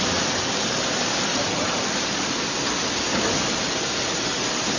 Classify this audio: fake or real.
real